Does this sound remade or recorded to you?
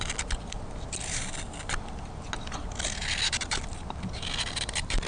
recorded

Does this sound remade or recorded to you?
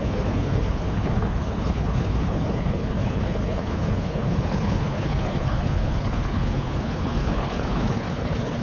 remade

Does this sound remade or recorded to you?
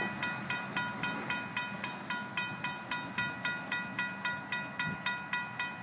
recorded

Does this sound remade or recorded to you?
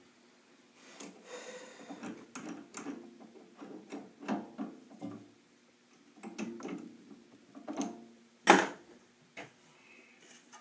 recorded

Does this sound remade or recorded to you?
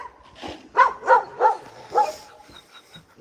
recorded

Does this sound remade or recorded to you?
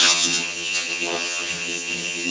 remade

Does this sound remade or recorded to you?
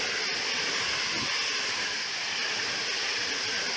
recorded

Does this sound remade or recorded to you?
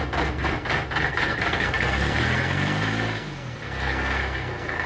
remade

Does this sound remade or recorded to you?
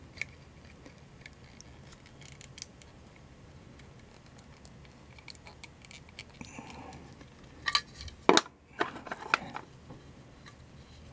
recorded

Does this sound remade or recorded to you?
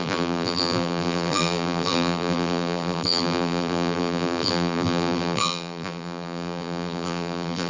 remade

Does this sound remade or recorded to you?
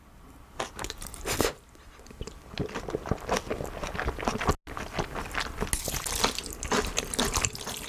recorded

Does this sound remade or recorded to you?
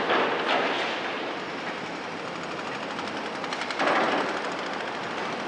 recorded